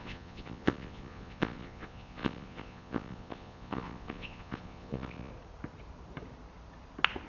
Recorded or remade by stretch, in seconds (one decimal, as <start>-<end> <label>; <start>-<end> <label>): 0.0-5.3 remade; 5.3-7.3 recorded